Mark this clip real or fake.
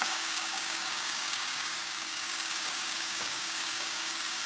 fake